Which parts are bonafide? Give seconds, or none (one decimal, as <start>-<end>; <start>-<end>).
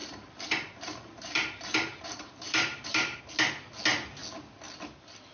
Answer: 3.2-5.3